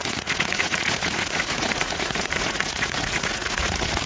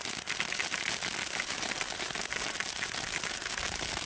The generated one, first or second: first